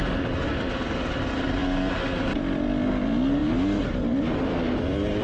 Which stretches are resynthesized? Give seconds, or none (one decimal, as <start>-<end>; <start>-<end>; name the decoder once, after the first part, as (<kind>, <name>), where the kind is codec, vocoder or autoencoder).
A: none